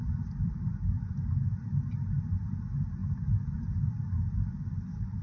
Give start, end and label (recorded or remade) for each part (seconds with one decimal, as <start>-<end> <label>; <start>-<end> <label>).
0.0-5.2 recorded